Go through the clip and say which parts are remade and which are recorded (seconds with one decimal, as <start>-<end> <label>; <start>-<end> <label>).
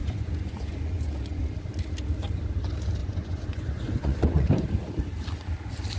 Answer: 0.0-1.4 remade; 1.4-3.0 recorded; 3.0-4.5 remade; 4.5-6.0 recorded